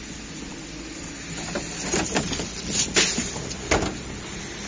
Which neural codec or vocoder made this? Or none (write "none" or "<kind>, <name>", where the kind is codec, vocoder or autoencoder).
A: none